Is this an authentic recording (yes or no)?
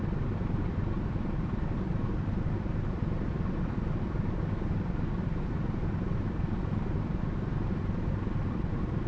yes